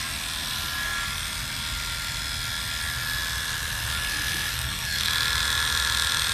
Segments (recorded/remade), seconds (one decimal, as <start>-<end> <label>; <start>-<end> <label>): 0.0-4.5 recorded; 4.5-5.1 remade; 5.1-6.3 recorded